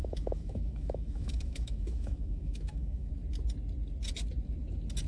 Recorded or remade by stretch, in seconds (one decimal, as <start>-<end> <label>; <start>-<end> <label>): 0.0-3.1 remade; 3.1-5.1 recorded

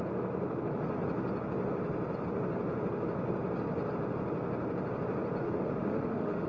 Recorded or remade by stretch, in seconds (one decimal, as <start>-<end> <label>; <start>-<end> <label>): 0.0-5.4 recorded; 5.4-6.5 remade

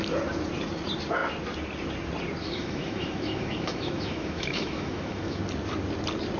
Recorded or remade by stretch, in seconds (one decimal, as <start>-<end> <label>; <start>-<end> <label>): 0.0-2.4 recorded; 2.4-5.4 remade; 5.4-6.4 recorded

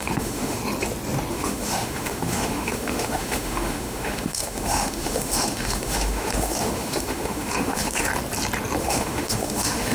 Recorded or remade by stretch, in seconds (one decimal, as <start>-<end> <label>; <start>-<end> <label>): 0.0-0.6 remade; 0.6-1.3 recorded; 1.3-8.1 remade; 8.1-8.8 recorded; 8.8-9.9 remade

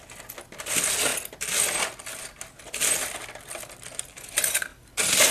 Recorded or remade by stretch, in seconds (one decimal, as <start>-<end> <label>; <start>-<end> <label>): 0.0-5.3 recorded